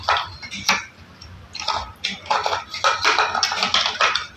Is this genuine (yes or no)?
yes